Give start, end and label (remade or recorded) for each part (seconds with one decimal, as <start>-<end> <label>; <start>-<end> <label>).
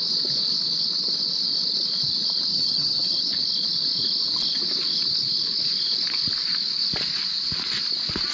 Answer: 0.0-2.5 recorded; 2.5-3.2 remade; 3.2-8.3 recorded